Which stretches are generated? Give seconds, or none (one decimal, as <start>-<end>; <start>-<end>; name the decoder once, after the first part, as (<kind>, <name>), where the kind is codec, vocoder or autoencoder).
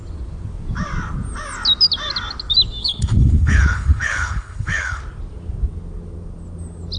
2.8-5.0 (codec, HILCodec)